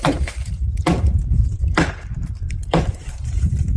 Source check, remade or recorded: remade